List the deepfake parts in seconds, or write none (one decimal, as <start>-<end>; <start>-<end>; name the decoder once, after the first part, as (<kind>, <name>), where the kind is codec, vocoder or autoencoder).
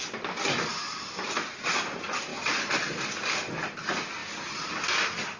0.7-1.6 (vocoder, BigVGAN v2); 2.3-3.3; 4.2-4.7